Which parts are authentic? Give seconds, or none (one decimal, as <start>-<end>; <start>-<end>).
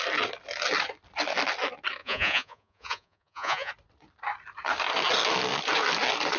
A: 0.0-2.0; 3.7-6.4